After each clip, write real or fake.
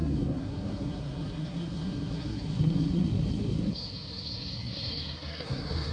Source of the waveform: fake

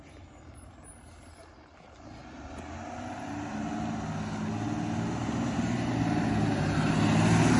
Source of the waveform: real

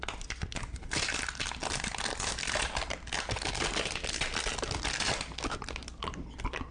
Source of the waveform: real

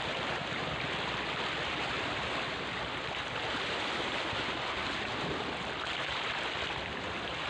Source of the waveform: real